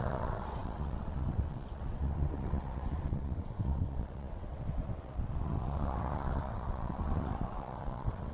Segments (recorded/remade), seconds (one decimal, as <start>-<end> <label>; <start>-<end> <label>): 0.0-8.3 remade